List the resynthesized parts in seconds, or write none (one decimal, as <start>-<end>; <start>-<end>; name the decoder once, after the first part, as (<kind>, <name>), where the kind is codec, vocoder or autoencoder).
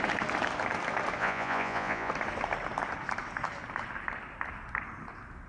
1.2-2.1 (vocoder, Vocos)